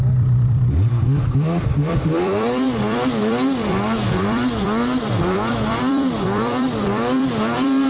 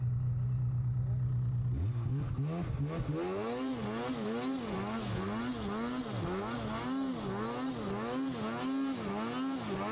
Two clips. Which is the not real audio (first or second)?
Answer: first